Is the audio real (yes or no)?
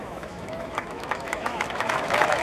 no